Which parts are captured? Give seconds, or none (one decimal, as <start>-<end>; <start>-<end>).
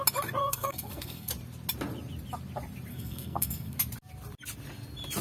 0.0-0.4; 1.3-2.9; 3.8-5.2